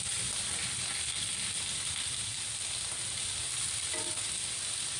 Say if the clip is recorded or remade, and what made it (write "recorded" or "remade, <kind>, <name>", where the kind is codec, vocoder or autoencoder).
recorded